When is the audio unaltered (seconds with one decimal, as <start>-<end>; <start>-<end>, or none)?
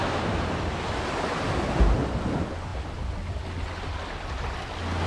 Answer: 0.0-5.1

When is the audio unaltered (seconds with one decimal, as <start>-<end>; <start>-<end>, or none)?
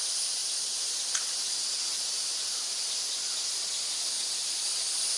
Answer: 0.0-5.2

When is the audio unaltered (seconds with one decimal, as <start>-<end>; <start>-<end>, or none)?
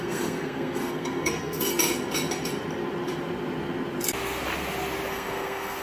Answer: 1.7-5.1